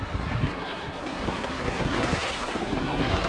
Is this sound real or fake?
fake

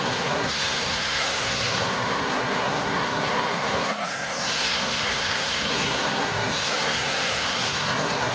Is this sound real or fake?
fake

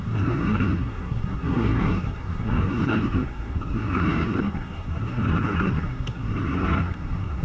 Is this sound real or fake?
fake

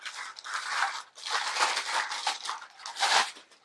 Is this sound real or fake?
real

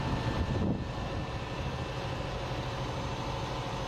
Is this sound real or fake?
real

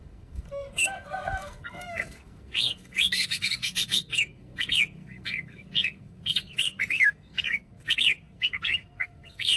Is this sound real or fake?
fake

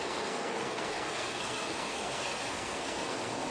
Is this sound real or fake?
fake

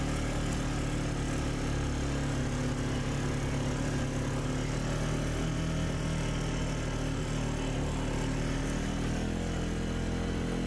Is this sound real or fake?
real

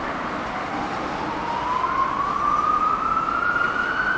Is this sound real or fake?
real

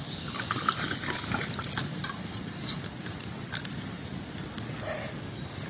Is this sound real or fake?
real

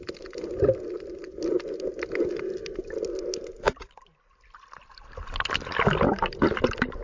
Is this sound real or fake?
real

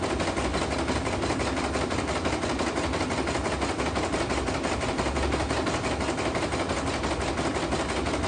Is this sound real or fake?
real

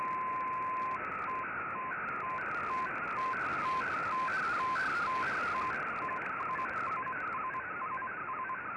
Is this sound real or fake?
real